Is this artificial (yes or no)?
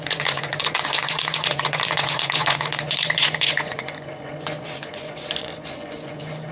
yes